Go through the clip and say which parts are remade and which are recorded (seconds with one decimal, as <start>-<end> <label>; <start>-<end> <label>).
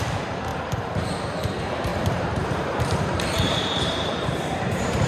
0.0-0.5 recorded; 0.5-1.5 remade; 1.5-1.9 recorded; 1.9-5.1 remade